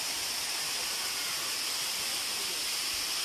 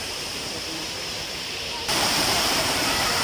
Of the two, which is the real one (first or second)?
first